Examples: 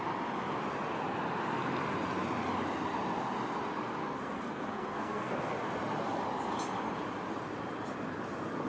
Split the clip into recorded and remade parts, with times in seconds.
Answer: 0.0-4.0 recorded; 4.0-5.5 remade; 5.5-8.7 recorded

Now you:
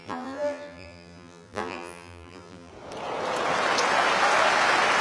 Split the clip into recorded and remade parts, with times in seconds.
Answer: 0.0-2.7 remade; 2.7-5.0 recorded

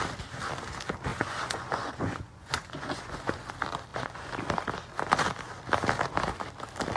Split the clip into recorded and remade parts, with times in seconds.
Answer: 0.0-1.1 recorded; 1.1-3.5 remade; 3.5-3.9 recorded; 3.9-4.4 remade; 4.4-7.0 recorded

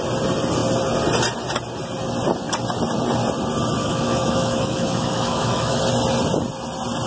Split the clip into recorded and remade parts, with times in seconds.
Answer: 0.0-3.8 recorded; 3.8-5.8 remade; 5.8-7.1 recorded

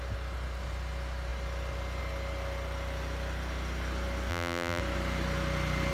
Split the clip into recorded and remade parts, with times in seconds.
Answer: 0.0-4.3 recorded; 4.3-4.8 remade; 4.8-5.9 recorded